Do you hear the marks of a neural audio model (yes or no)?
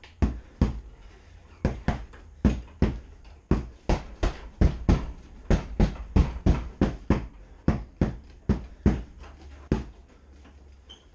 no